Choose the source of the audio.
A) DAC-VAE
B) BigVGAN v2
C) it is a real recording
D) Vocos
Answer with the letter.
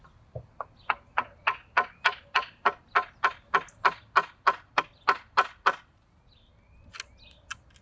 C